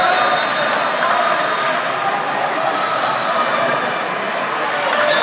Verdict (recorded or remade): recorded